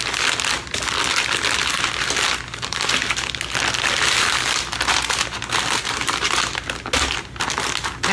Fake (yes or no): no